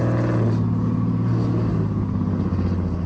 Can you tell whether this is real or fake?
real